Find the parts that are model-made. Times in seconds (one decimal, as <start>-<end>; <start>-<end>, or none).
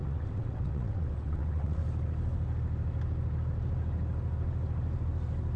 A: 0.0-1.8